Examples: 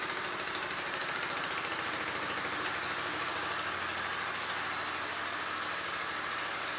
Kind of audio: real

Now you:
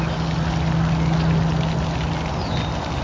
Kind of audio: real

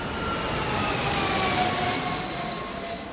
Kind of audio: real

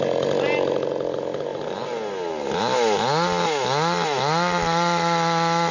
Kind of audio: real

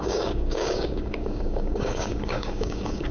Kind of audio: fake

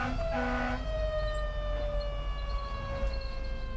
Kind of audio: real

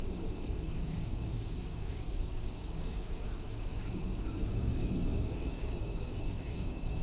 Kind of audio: fake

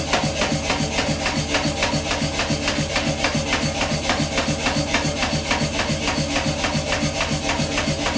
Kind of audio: real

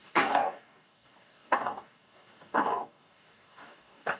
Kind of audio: fake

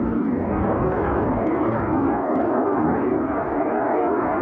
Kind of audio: fake